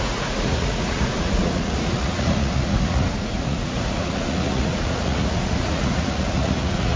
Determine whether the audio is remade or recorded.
remade